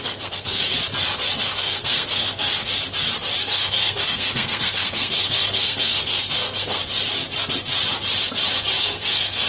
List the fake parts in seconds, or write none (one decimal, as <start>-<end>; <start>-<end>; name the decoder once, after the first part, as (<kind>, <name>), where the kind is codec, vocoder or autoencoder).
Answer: 0.0-0.6 (codec, SNAC); 1.4-2.6; 3.4-6.8; 8.8-9.5